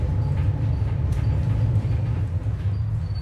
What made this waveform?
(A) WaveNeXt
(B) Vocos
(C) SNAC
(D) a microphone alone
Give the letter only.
D